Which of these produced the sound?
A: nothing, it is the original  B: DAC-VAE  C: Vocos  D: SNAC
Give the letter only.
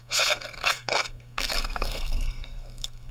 D